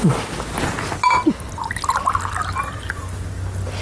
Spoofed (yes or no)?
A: no